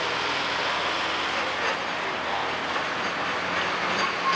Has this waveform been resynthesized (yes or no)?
no